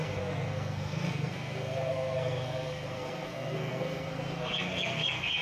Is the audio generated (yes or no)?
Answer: yes